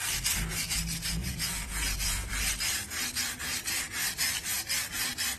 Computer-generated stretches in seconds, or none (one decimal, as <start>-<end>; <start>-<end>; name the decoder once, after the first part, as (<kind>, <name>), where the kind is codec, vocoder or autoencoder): 1.2-2.3 (vocoder, Vocos)